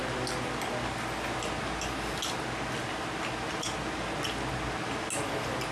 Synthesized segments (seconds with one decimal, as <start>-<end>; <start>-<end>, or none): none